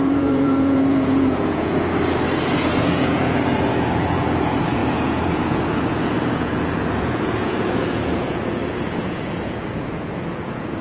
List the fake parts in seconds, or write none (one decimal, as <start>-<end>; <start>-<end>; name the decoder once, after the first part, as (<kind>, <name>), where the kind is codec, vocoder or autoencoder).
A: 0.0-1.9 (vocoder, Vocos); 2.8-10.8